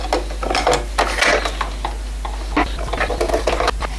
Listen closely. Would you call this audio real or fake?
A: real